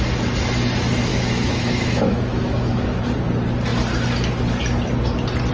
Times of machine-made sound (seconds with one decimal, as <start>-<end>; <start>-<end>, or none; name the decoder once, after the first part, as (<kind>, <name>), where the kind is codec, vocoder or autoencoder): 1.1-3.0 (autoencoder, DAC-VAE)

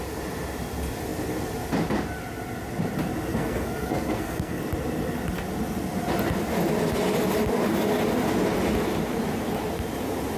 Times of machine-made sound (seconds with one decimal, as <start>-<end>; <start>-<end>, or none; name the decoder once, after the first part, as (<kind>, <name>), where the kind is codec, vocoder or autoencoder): 3.3-4.6 (codec, SNAC)

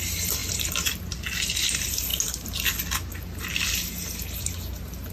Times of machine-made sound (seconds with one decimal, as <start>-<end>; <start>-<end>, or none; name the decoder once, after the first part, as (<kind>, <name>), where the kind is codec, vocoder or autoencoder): none

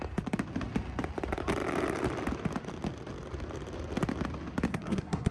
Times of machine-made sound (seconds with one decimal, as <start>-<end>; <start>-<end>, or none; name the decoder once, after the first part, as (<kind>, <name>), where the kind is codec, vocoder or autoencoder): 4.7-5.3 (codec, SNAC)